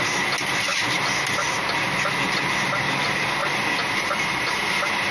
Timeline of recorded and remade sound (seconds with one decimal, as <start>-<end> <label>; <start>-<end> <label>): 0.0-3.4 recorded; 3.4-5.1 remade